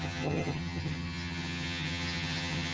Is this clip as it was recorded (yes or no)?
no